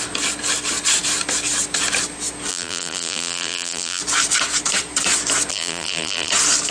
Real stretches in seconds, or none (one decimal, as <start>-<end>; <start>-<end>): 0.0-2.5; 4.0-5.5; 6.3-6.7